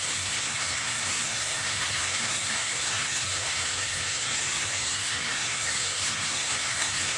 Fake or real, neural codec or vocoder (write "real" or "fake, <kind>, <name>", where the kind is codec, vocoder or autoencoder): fake, codec, SNAC